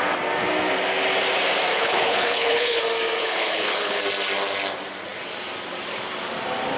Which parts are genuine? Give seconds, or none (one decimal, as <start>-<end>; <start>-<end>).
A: 0.0-1.7; 2.8-3.2; 4.0-6.8